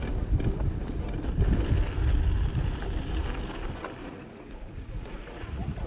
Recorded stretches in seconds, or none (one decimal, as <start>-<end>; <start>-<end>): 0.0-4.0